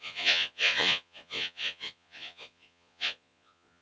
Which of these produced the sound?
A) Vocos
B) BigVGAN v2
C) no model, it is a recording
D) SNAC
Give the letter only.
A